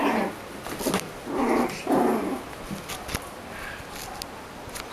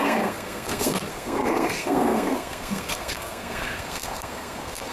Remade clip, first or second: second